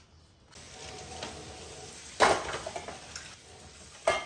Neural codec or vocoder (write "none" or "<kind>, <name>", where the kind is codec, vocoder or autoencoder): none